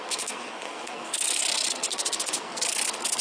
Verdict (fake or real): fake